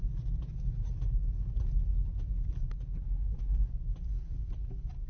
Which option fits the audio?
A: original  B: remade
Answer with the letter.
A